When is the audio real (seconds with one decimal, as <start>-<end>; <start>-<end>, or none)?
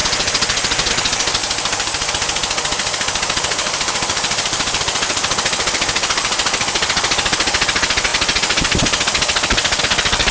0.0-1.4; 2.1-3.6; 4.8-10.3